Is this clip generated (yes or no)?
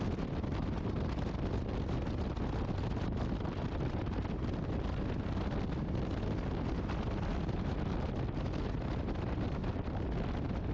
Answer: no